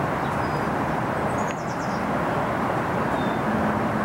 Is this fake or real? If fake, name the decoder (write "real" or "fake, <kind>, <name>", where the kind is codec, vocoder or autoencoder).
real